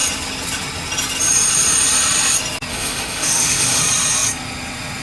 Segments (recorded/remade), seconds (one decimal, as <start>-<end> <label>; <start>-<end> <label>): 0.0-2.7 recorded; 2.7-3.8 remade; 3.8-5.0 recorded